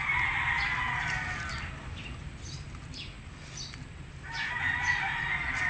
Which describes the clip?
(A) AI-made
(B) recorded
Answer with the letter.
B